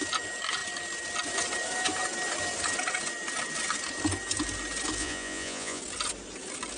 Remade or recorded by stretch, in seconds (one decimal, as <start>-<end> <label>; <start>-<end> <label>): 0.0-5.0 recorded; 5.0-5.8 remade; 5.8-6.8 recorded